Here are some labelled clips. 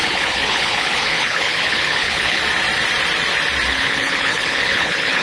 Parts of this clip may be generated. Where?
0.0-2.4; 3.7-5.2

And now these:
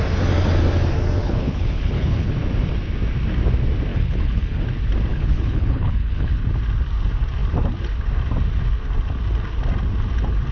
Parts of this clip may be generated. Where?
1.2-2.3; 3.9-4.6; 5.1-6.3

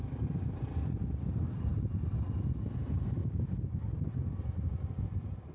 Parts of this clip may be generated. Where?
none

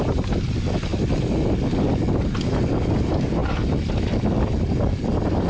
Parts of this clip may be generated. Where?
none

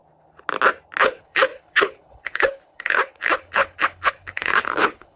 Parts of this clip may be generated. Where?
1.0-5.2

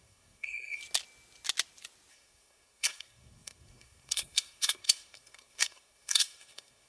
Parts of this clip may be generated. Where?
0.0-0.8; 2.1-6.9

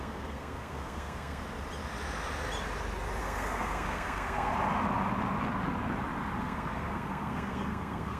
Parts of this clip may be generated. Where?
0.0-1.4; 3.2-4.5; 6.4-8.2